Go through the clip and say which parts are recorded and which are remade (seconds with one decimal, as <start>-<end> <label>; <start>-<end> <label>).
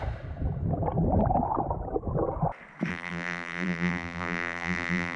0.0-2.9 recorded; 2.9-5.2 remade